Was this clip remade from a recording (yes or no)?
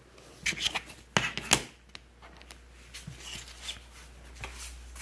no